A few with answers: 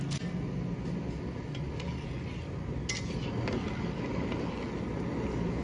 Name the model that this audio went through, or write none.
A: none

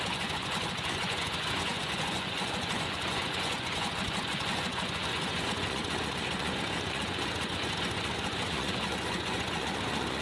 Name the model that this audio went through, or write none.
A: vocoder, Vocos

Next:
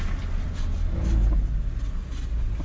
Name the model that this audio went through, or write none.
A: none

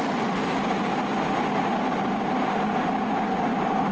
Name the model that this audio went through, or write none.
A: none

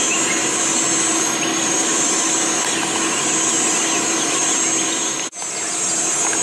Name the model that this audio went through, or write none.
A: none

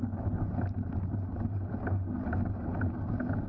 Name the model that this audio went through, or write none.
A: none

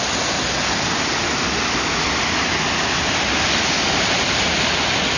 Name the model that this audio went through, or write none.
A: none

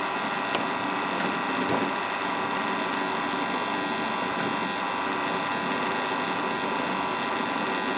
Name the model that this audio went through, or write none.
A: none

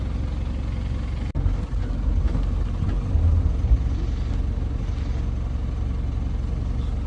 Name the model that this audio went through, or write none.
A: none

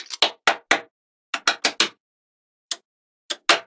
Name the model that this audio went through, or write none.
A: none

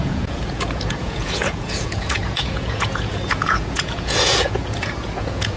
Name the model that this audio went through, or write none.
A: vocoder, Vocos